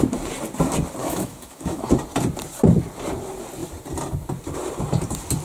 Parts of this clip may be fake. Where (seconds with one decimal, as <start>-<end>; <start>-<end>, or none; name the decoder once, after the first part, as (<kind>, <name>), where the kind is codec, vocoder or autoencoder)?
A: 1.0-1.8 (autoencoder, DAC-VAE)